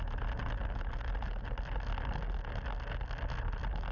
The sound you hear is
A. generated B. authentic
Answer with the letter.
B